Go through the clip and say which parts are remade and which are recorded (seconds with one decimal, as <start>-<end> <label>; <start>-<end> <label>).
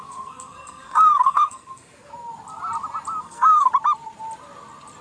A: 0.0-2.1 remade; 2.1-3.2 recorded; 3.2-3.7 remade; 3.7-5.0 recorded